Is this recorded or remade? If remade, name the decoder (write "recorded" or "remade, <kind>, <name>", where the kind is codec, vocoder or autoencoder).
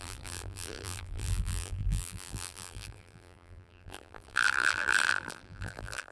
remade, vocoder, BigVGAN v2